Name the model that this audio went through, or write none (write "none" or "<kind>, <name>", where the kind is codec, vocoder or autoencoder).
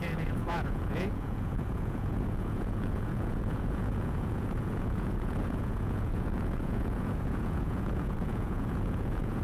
vocoder, Vocos